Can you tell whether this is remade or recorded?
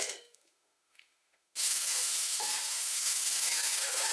remade